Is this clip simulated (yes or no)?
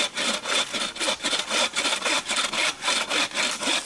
no